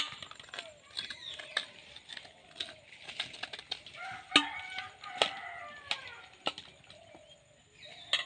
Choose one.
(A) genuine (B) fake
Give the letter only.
A